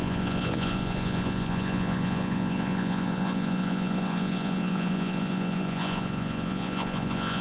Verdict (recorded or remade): remade